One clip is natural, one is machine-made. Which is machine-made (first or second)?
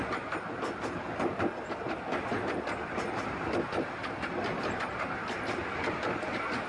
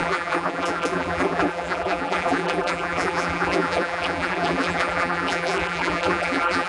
second